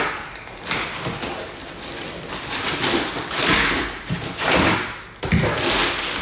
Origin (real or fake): real